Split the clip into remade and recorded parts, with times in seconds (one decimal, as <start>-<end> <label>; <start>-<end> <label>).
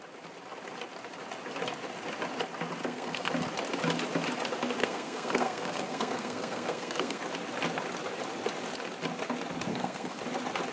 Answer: 0.0-2.8 recorded; 2.8-3.3 remade; 3.3-4.8 recorded; 4.8-7.2 remade; 7.2-9.7 recorded; 9.7-10.2 remade; 10.2-10.7 recorded